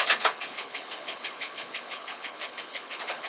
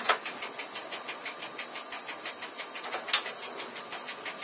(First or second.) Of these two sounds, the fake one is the first